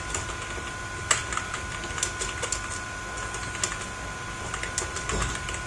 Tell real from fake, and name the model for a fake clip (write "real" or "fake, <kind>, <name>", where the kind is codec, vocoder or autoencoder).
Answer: real